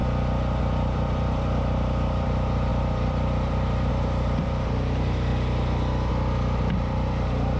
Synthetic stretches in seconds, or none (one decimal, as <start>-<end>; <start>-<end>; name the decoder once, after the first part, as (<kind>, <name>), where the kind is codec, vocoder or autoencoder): 0.6-5.3 (vocoder, BigVGAN v2); 6.8-7.6